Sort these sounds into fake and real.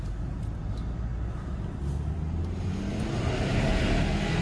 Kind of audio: real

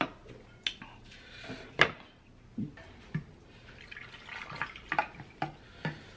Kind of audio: real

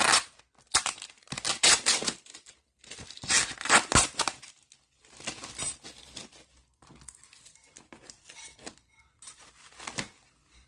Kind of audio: real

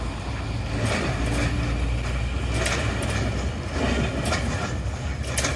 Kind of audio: real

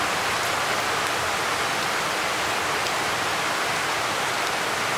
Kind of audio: real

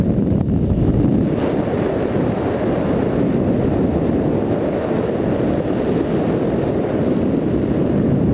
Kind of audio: real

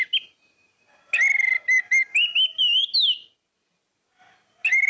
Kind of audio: real